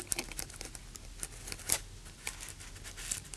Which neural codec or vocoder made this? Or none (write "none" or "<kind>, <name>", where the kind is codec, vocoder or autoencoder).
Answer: none